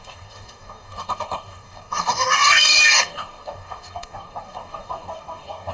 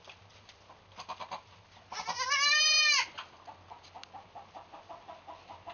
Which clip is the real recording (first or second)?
second